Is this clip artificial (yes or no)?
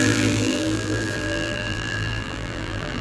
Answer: yes